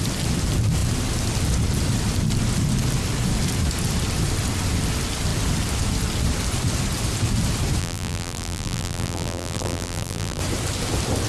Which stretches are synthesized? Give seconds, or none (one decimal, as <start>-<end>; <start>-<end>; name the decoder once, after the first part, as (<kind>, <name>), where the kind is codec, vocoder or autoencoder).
7.8-10.4 (vocoder, BigVGAN v2)